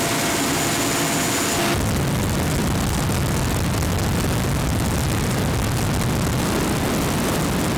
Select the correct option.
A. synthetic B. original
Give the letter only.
B